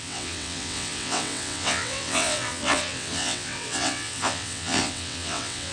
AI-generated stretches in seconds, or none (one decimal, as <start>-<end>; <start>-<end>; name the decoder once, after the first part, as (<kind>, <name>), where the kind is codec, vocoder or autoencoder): 0.0-5.7 (vocoder, WaveNeXt)